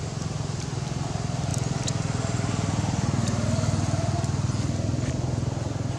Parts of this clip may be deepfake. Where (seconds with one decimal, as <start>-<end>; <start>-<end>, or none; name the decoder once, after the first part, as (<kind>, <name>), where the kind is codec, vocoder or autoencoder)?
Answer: none